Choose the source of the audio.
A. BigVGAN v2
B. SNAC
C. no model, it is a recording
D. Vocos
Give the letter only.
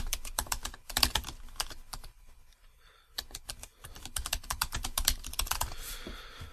A